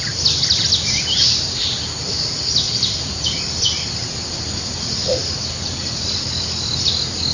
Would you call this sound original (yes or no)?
yes